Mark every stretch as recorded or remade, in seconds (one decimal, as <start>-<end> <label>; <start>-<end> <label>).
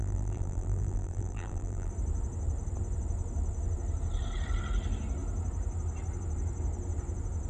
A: 0.0-1.9 remade; 1.9-7.5 recorded